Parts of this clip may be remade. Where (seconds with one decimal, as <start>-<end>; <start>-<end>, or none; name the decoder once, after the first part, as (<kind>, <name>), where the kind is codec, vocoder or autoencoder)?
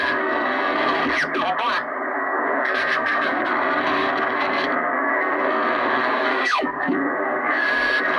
0.0-1.0 (codec, SNAC); 2.1-8.2